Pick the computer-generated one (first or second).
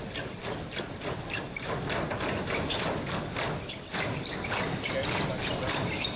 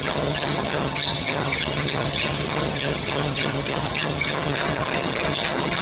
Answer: second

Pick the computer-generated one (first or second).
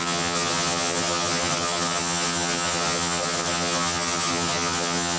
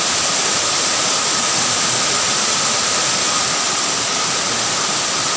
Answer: first